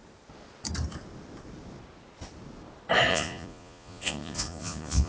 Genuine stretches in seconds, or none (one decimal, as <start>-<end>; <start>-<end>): 0.0-3.1